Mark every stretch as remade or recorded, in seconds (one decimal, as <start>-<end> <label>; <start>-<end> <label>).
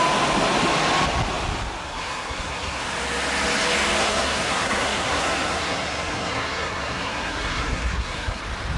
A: 0.0-1.8 recorded; 1.8-2.8 remade; 2.8-4.0 recorded; 4.0-8.4 remade; 8.4-8.8 recorded